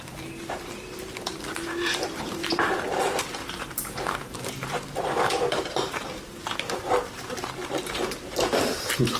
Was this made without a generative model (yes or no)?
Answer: no